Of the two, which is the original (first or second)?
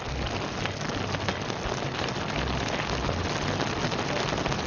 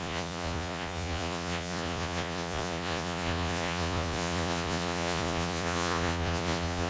first